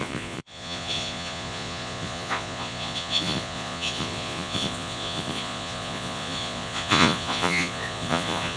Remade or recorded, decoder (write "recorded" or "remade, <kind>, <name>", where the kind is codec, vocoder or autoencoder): remade, vocoder, Vocos